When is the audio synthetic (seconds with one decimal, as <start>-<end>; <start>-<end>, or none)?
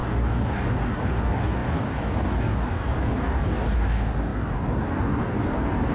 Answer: 0.0-5.9